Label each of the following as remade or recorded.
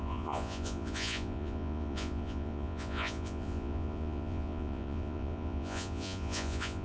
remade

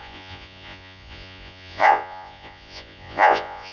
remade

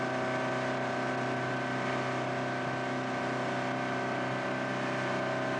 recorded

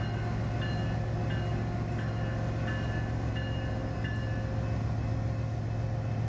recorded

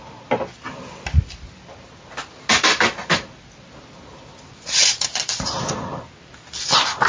recorded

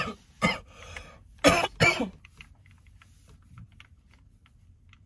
recorded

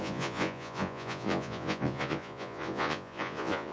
remade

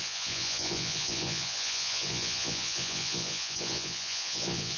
remade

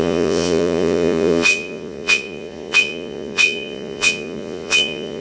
remade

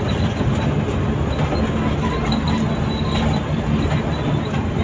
recorded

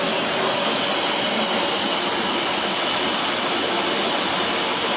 recorded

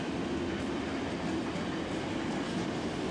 recorded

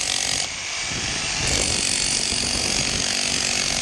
recorded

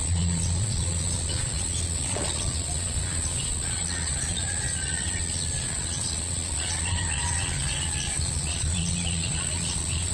remade